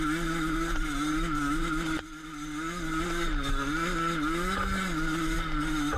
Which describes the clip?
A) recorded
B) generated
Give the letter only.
A